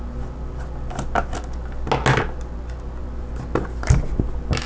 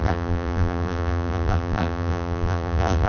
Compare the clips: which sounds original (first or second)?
first